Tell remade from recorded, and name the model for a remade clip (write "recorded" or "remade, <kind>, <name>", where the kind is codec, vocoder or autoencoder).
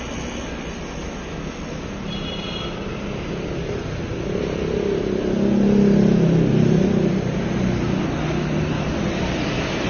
recorded